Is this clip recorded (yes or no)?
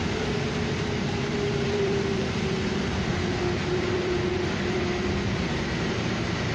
no